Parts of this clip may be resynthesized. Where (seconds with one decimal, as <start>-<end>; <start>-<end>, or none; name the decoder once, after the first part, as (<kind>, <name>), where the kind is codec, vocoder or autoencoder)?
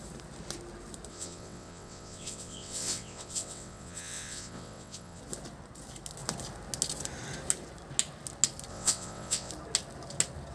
1.1-5.2 (vocoder, WaveNeXt); 8.7-9.5